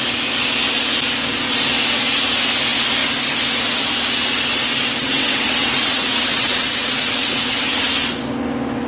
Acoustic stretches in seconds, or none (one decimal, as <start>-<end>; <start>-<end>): 0.0-5.0; 7.9-8.9